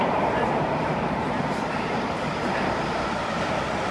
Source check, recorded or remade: remade